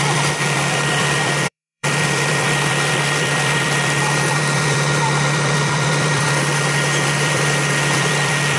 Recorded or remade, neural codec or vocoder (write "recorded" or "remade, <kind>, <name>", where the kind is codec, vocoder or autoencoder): remade, vocoder, BigVGAN v2